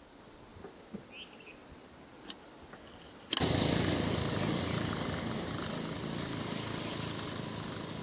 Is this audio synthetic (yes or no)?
no